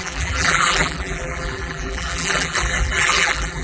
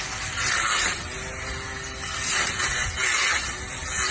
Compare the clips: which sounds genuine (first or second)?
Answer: second